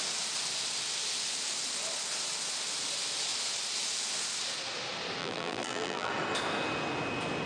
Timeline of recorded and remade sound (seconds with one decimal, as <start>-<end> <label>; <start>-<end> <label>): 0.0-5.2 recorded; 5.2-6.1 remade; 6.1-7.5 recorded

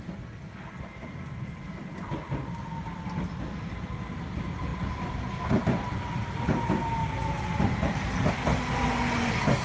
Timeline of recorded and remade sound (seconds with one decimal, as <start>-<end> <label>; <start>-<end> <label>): 0.0-9.6 recorded

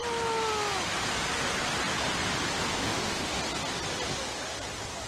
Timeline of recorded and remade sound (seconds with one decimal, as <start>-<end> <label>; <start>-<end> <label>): 0.0-2.8 recorded; 2.8-3.4 remade; 3.4-5.1 recorded

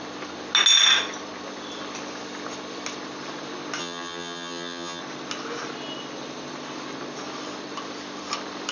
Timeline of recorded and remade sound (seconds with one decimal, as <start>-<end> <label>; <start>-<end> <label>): 0.0-3.8 recorded; 3.8-5.0 remade; 5.0-8.7 recorded

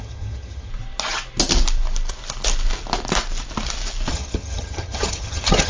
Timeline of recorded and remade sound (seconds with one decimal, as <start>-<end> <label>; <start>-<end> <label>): 0.0-0.7 remade; 0.7-4.1 recorded; 4.1-5.7 remade

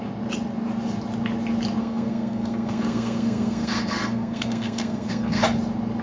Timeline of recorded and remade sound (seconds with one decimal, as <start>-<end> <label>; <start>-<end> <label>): 0.0-1.8 recorded; 1.8-5.4 remade; 5.4-6.0 recorded